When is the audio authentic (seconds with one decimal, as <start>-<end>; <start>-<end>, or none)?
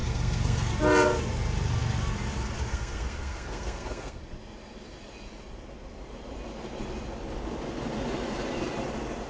0.7-2.7; 4.2-9.3